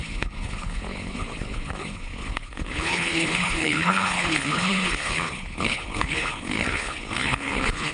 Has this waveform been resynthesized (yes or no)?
yes